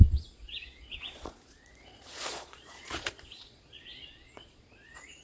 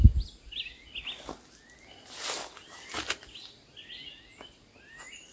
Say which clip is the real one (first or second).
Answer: second